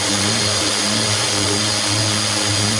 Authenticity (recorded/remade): remade